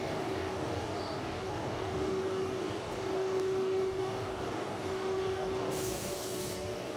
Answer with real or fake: fake